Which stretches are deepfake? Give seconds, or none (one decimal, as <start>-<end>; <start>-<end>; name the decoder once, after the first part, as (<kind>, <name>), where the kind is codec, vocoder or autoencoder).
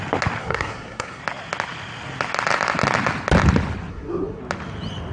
0.4-1.2 (codec, SNAC); 3.9-4.4